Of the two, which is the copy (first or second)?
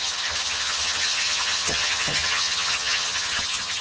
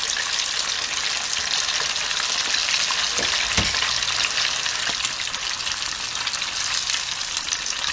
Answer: first